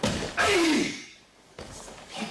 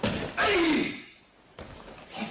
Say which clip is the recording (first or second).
second